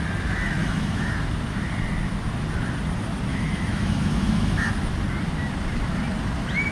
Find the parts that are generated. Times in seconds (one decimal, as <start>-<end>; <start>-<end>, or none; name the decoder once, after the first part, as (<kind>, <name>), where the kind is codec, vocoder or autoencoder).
0.6-1.1 (autoencoder, DAC-VAE); 3.3-4.7